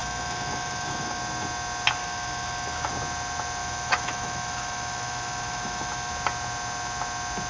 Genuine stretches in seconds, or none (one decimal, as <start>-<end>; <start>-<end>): 1.2-2.0; 2.9-3.6; 6.1-7.5